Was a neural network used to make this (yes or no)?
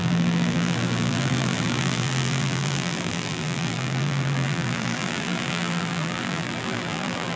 yes